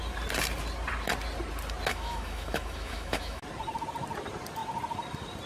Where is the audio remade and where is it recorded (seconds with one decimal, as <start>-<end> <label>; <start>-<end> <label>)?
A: 0.0-1.9 recorded; 1.9-3.4 remade; 3.4-5.5 recorded